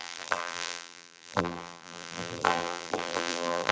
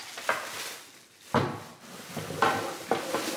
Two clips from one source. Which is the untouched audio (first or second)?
second